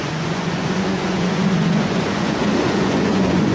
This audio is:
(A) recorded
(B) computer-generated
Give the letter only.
B